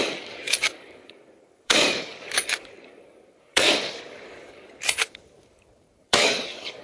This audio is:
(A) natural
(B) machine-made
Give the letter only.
B